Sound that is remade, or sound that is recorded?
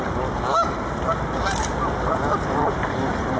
recorded